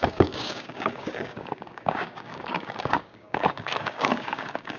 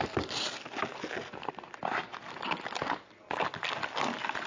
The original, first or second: second